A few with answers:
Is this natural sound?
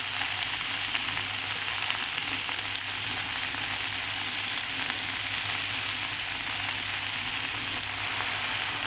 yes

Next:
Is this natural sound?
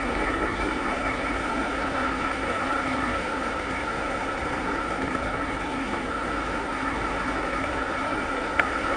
no